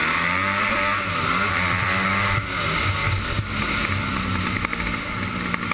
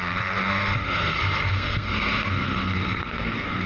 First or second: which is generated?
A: second